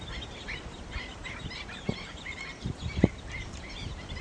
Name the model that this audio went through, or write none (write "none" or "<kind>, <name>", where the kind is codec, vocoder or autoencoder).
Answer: vocoder, BigVGAN v2